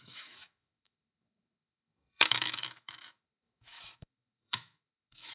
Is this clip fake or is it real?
fake